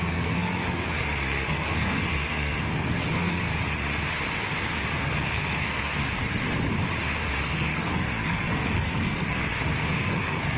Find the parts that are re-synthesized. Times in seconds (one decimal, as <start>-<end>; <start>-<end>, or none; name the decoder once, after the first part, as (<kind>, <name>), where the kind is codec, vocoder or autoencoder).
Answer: 0.0-3.5 (codec, SNAC); 5.0-6.0; 7.4-9.4; 10.0-10.6